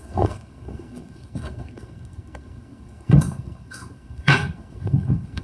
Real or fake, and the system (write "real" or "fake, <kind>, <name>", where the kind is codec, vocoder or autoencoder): fake, codec, SNAC